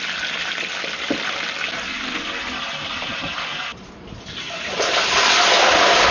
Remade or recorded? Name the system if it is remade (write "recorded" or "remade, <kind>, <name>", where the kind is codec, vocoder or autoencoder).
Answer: recorded